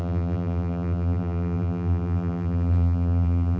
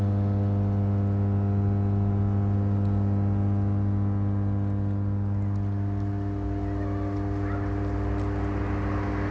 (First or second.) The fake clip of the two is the first